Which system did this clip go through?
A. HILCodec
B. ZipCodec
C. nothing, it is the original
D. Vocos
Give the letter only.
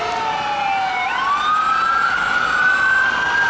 C